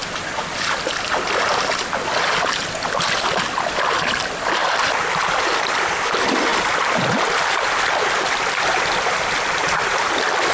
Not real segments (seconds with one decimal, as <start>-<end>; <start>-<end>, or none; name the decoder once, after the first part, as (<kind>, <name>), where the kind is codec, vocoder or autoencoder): 3.9-6.5 (vocoder, BigVGAN v2); 8.8-10.5